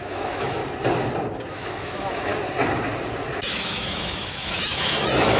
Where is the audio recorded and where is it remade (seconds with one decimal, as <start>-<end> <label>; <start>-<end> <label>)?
0.0-0.6 remade; 0.6-1.5 recorded; 1.5-2.3 remade; 2.3-3.4 recorded; 3.4-5.4 remade